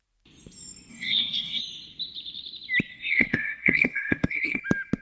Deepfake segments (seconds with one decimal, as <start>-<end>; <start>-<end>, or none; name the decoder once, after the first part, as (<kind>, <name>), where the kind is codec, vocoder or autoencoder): 0.9-1.6 (codec, SNAC); 2.9-4.6